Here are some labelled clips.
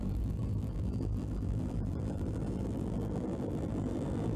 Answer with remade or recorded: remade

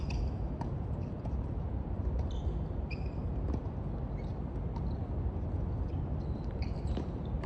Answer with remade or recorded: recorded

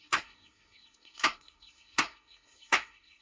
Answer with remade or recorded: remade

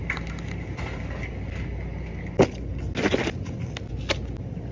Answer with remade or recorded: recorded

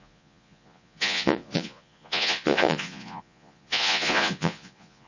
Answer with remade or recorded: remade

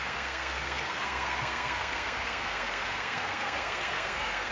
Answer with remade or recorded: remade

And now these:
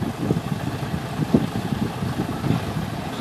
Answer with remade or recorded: recorded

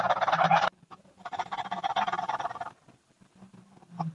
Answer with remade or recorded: remade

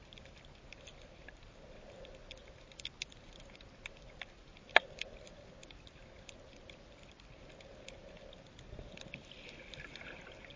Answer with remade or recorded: recorded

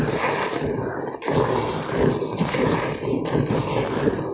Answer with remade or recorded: recorded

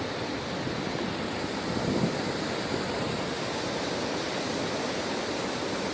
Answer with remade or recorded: remade